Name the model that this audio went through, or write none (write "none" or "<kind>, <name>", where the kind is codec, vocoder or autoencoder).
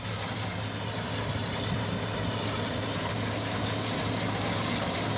none